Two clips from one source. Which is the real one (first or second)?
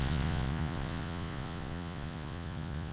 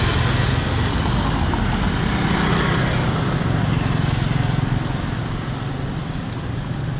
second